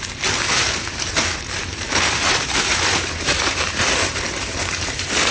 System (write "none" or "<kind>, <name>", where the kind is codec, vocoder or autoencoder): vocoder, BigVGAN v2